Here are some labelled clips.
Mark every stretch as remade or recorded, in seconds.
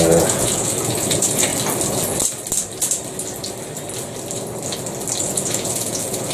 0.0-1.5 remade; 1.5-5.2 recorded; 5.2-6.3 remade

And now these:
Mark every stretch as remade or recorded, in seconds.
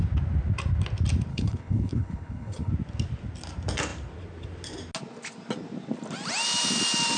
0.0-1.3 recorded; 1.3-2.7 remade; 2.7-7.2 recorded